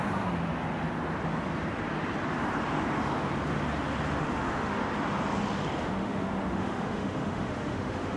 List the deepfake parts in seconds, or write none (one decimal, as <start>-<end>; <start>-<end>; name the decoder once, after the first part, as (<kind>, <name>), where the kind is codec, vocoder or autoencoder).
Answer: 4.2-4.8 (autoencoder, DAC-VAE); 5.8-8.2